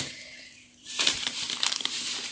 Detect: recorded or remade remade